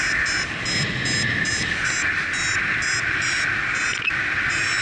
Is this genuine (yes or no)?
yes